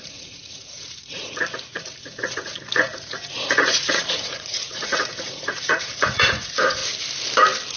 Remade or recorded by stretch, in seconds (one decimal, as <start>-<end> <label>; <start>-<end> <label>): 0.0-6.8 remade; 6.8-7.8 recorded